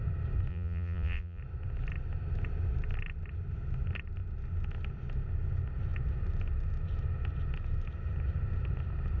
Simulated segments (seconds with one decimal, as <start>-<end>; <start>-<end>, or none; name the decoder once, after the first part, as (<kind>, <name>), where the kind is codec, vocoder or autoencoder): 0.5-1.4 (vocoder, Vocos)